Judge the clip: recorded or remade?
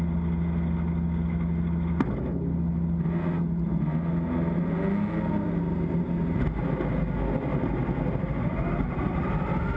recorded